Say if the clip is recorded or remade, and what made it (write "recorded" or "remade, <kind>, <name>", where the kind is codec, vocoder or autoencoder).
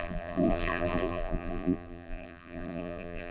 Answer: remade, vocoder, BigVGAN v2